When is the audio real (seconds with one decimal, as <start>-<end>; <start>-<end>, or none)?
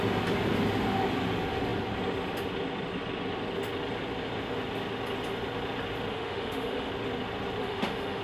0.0-6.1; 6.9-7.6